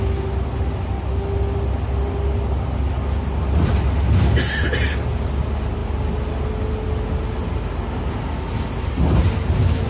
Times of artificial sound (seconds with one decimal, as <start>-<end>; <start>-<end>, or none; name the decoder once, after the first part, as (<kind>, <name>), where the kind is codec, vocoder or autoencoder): none